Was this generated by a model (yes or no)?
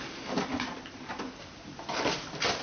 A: no